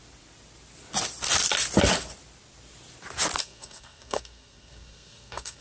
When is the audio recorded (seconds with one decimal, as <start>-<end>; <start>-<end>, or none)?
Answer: 0.0-3.4